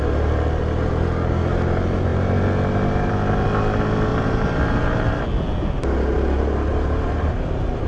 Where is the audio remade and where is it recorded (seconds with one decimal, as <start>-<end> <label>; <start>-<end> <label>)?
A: 0.0-4.1 recorded; 4.1-5.2 remade; 5.2-6.7 recorded; 6.7-7.3 remade; 7.3-7.9 recorded

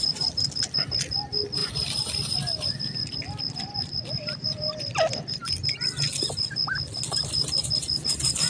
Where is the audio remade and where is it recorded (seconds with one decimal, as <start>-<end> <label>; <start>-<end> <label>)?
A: 0.0-8.5 recorded

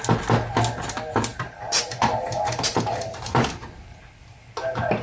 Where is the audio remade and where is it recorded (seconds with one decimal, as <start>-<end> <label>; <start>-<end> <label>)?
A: 0.0-1.3 recorded; 1.3-3.5 remade; 3.5-5.0 recorded